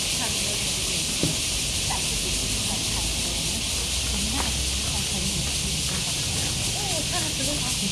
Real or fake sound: real